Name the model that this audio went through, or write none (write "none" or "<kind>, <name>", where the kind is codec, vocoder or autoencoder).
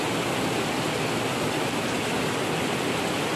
none